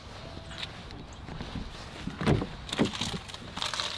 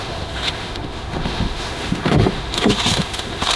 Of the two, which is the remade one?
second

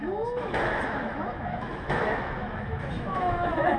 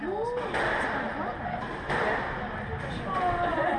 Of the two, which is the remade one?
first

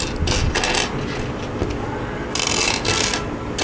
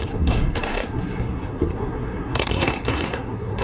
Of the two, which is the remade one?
second